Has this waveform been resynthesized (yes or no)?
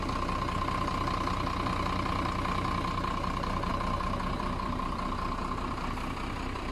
yes